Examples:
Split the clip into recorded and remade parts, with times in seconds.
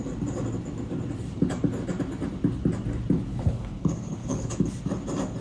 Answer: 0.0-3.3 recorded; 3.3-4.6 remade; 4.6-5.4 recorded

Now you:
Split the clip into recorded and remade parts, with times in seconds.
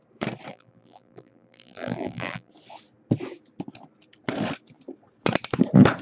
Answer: 0.0-0.5 recorded; 0.5-2.5 remade; 2.5-6.0 recorded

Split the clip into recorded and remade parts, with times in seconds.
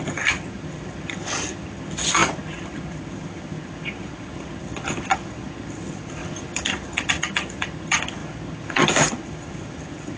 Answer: 0.0-10.2 remade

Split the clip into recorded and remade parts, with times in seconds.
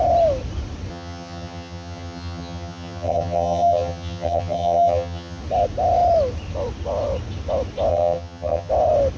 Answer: 0.0-0.9 recorded; 0.9-5.4 remade; 5.4-7.9 recorded; 7.9-8.7 remade; 8.7-9.2 recorded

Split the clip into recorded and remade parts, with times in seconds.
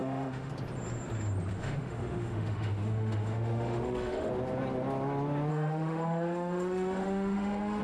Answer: 0.0-0.5 remade; 0.5-1.5 recorded; 1.5-4.3 remade; 4.3-5.5 recorded; 5.5-7.8 remade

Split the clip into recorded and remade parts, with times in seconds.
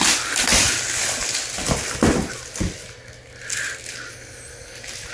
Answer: 0.0-5.1 recorded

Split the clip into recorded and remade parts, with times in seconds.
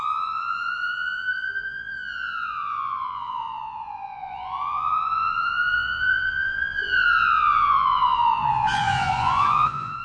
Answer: 0.0-10.0 remade